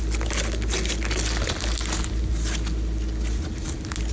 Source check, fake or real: real